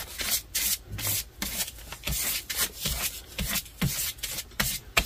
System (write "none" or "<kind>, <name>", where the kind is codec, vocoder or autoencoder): none